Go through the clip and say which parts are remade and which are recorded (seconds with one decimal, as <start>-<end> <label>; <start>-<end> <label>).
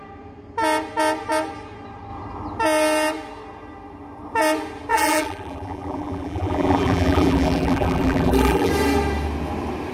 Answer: 0.0-4.9 recorded; 4.9-8.7 remade; 8.7-9.9 recorded